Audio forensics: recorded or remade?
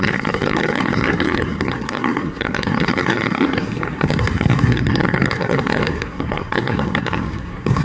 remade